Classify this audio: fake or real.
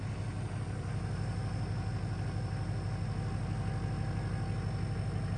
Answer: real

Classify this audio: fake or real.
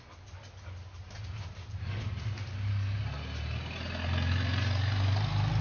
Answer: real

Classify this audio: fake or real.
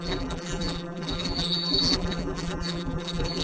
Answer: fake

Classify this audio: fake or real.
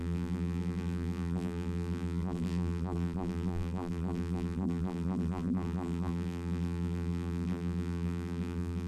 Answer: fake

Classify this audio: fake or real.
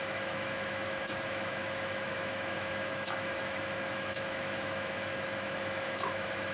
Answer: fake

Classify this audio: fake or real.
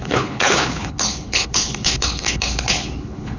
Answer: fake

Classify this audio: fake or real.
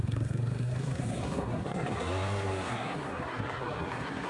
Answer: fake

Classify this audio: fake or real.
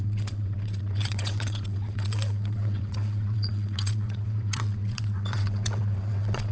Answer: fake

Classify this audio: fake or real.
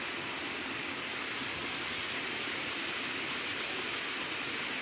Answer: real